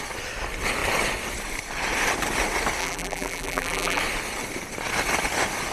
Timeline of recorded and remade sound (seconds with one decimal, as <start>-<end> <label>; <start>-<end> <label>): 0.0-2.8 recorded; 2.8-4.0 remade; 4.0-5.7 recorded